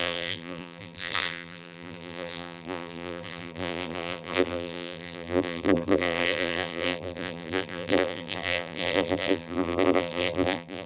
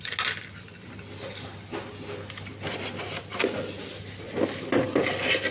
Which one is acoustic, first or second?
second